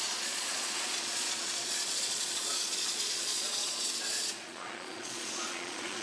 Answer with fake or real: fake